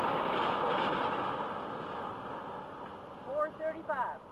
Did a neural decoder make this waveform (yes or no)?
no